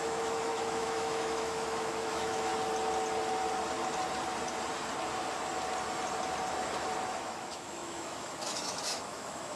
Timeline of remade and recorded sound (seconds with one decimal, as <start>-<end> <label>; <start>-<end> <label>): 0.0-2.5 remade; 2.5-7.1 recorded; 7.1-9.6 remade